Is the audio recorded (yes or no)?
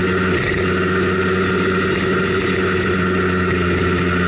yes